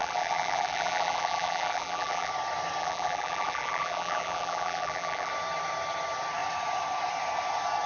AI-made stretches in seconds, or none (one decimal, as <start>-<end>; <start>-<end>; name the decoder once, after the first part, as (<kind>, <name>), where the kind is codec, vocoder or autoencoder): 0.0-2.3 (vocoder, BigVGAN v2); 2.8-5.3